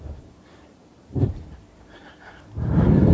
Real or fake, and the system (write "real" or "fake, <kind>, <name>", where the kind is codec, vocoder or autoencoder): fake, vocoder, BigVGAN v2